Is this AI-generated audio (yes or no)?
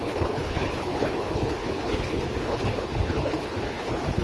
yes